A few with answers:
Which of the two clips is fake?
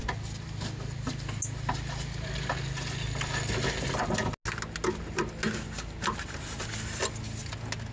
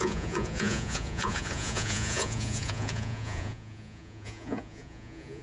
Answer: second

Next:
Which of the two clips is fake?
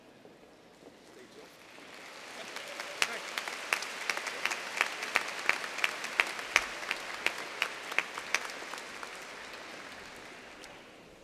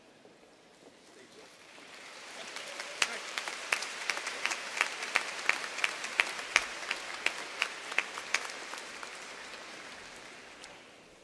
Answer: second